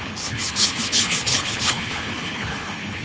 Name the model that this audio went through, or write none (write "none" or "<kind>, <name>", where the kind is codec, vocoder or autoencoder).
codec, HILCodec